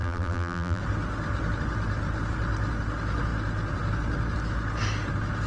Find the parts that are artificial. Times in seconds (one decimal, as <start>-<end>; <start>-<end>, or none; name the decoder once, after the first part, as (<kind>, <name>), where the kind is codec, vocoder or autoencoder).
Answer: 0.0-0.8 (vocoder, BigVGAN v2)